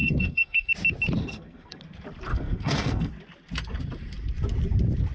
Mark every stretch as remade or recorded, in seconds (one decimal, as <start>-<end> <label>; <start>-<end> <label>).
0.0-0.7 remade; 0.7-1.2 recorded; 1.2-1.8 remade; 1.8-2.3 recorded; 2.3-3.1 remade; 3.1-5.1 recorded